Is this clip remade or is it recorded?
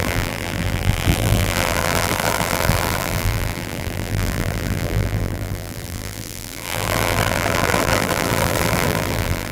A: remade